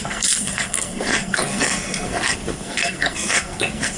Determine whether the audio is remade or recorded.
remade